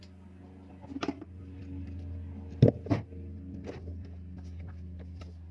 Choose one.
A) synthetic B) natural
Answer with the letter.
B